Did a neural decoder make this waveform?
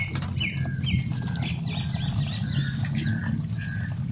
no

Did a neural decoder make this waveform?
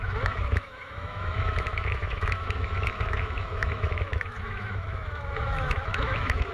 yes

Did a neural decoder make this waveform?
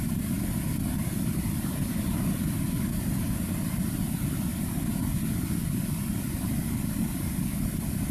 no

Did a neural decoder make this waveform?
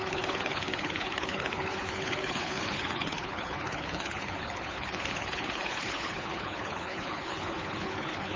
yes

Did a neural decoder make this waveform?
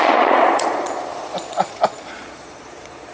yes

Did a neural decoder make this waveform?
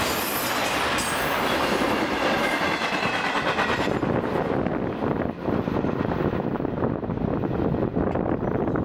no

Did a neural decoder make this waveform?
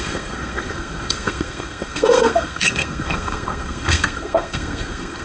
yes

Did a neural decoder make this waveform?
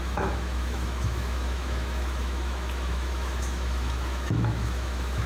yes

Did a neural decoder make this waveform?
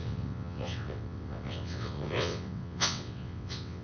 yes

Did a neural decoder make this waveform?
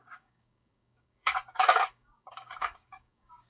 yes